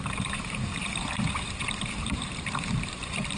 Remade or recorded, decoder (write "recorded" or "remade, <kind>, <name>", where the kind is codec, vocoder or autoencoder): remade, vocoder, BigVGAN v2